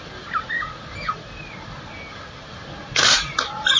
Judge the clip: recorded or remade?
recorded